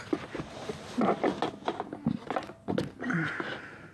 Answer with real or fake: real